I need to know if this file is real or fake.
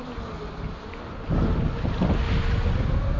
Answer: real